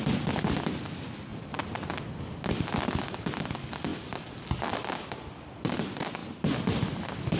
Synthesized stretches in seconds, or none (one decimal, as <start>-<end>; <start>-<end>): none